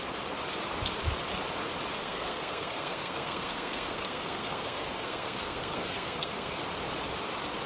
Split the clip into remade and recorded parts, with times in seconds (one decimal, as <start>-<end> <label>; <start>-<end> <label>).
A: 0.0-2.0 recorded; 2.0-6.6 remade; 6.6-7.7 recorded

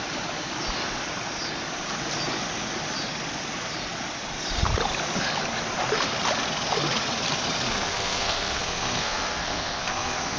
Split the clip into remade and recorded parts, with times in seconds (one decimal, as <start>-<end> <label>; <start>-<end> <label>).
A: 0.0-7.7 recorded; 7.7-10.4 remade